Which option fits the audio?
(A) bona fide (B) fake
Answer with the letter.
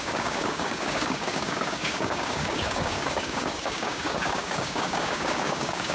B